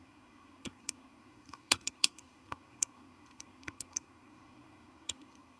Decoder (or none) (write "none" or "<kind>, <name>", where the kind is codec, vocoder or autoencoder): codec, SNAC